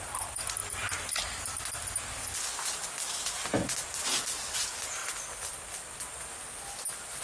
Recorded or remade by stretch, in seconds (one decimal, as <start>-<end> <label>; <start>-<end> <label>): 0.0-7.2 recorded